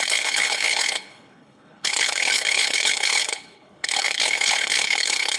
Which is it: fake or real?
fake